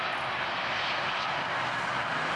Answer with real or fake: real